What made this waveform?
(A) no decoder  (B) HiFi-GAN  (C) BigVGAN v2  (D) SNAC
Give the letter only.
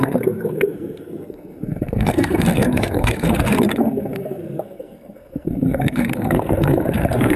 D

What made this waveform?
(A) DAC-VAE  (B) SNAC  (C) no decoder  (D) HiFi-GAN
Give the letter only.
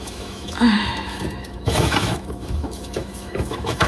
A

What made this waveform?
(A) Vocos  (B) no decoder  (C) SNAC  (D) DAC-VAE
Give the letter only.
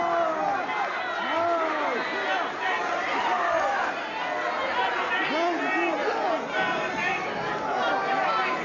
B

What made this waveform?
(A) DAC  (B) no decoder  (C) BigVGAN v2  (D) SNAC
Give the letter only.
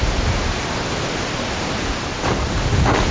B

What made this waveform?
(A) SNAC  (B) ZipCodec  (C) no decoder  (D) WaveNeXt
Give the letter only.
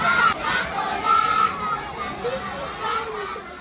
C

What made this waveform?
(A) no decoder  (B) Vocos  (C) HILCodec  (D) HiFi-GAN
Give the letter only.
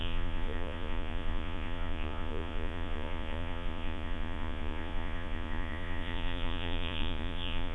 B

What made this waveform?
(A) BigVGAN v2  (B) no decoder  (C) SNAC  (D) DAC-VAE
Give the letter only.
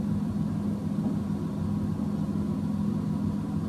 B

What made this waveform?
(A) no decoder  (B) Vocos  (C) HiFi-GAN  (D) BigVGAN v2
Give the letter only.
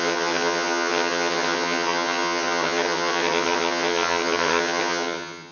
C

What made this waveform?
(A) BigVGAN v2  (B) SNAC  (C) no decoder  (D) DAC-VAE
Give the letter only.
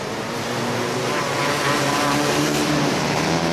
A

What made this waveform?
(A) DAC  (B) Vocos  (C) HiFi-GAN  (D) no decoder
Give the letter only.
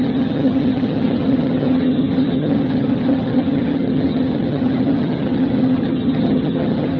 C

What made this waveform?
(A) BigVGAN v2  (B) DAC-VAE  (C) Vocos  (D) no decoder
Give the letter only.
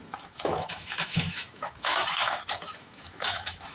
B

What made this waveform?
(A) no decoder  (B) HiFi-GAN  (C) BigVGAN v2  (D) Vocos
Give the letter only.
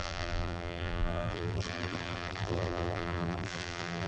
C